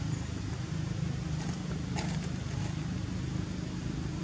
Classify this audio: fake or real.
real